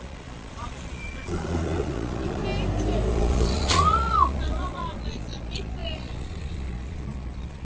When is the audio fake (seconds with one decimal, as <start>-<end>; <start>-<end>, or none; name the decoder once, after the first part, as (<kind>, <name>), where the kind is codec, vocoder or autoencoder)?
0.0-2.4 (vocoder, Vocos); 3.1-7.6